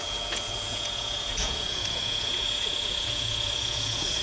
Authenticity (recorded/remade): remade